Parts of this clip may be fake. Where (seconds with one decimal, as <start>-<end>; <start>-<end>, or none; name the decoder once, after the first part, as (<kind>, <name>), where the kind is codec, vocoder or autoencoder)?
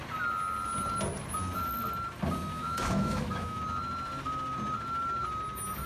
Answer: 2.5-3.6 (autoencoder, DAC-VAE)